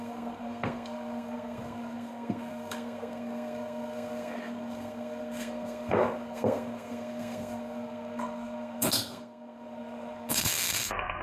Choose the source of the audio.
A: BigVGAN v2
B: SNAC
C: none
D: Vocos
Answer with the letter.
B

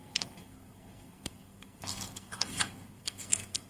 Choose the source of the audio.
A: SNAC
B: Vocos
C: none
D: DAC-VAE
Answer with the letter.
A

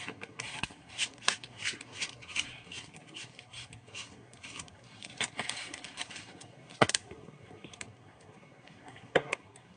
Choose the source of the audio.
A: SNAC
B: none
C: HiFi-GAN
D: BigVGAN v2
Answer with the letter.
A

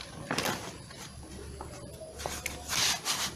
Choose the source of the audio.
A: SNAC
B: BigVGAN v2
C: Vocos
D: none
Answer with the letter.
D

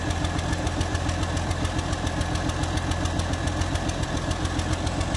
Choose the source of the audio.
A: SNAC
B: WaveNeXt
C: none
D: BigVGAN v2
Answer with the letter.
C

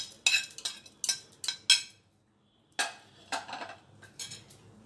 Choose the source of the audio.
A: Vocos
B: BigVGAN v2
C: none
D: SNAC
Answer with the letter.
C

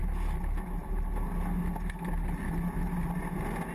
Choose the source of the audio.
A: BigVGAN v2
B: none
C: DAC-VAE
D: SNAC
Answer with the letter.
B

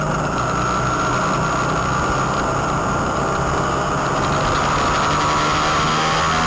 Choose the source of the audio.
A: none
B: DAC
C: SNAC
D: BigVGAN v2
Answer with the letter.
A